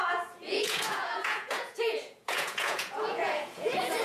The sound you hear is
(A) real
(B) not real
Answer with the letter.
B